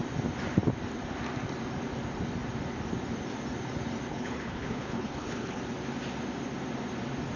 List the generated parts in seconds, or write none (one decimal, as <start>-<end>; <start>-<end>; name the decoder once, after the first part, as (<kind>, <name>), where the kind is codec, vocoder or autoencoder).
4.1-5.6 (codec, HILCodec)